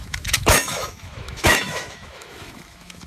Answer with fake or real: fake